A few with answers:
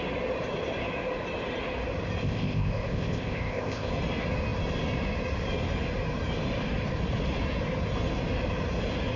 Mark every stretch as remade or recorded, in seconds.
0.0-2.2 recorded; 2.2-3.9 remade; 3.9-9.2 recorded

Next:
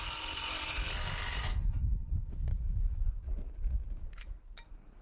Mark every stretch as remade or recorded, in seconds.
0.0-5.0 recorded

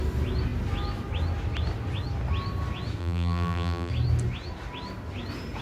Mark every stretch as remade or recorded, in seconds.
0.0-3.0 recorded; 3.0-3.9 remade; 3.9-5.6 recorded

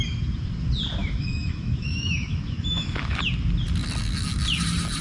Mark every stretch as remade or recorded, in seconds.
0.0-1.0 recorded; 1.0-3.2 remade; 3.2-5.0 recorded

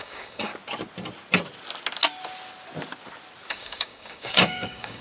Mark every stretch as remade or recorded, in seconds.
0.0-0.5 remade; 0.5-3.5 recorded; 3.5-5.0 remade

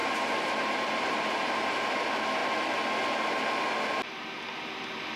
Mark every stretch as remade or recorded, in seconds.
0.0-1.9 remade; 1.9-5.2 recorded